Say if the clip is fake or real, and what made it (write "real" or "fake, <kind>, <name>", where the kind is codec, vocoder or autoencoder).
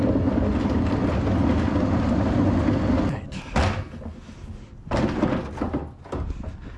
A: real